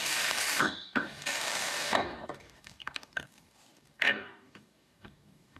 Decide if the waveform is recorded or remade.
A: remade